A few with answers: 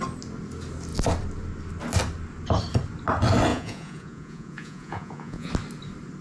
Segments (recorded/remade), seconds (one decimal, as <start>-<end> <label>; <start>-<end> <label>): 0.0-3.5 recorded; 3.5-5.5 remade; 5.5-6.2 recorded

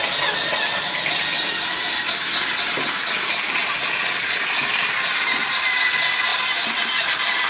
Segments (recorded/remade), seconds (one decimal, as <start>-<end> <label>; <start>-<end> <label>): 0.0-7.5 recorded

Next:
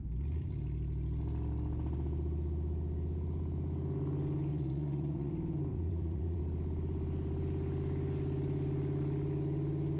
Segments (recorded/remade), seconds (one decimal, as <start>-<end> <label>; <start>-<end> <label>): 0.0-4.5 recorded; 4.5-5.3 remade; 5.3-5.7 recorded; 5.7-6.4 remade; 6.4-10.0 recorded